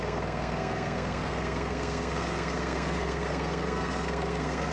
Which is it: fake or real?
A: fake